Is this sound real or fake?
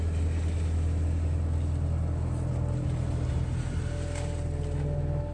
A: real